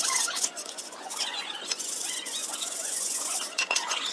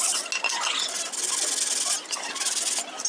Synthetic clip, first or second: first